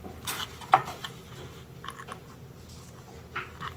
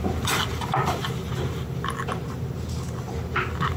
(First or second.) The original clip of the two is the first